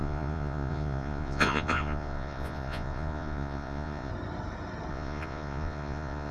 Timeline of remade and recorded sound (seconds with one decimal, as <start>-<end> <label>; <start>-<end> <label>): 0.0-4.1 remade; 4.1-4.9 recorded; 4.9-6.3 remade